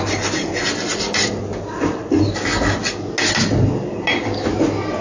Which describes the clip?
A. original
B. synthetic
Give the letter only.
A